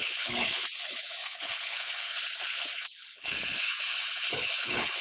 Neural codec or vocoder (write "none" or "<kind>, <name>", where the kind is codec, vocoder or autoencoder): codec, HILCodec